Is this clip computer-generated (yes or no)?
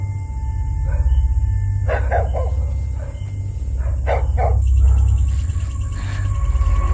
no